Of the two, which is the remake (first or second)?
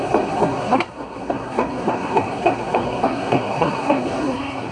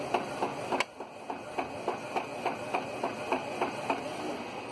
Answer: first